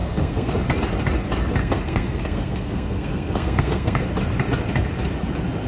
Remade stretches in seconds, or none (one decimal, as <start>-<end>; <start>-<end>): 0.0-0.5; 1.6-4.0